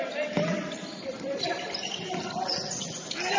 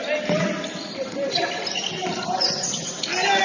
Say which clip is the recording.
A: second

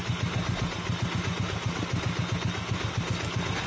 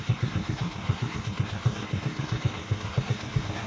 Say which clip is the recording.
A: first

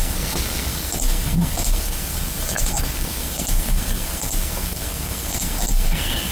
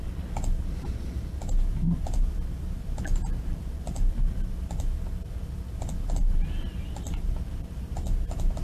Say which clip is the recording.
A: second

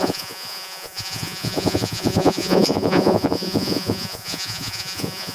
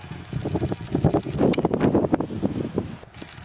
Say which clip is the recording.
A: second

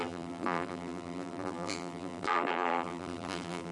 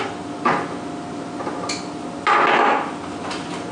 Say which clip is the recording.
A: second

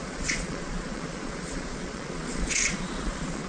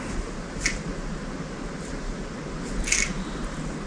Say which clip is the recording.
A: second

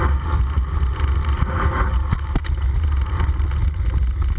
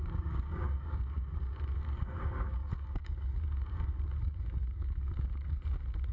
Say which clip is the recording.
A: first